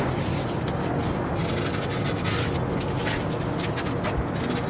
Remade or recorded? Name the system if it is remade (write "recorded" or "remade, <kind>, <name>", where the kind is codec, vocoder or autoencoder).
recorded